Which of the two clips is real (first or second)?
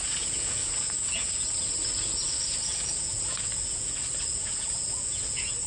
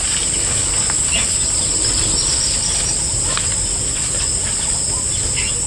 second